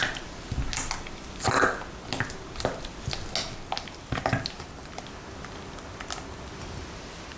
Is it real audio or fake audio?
real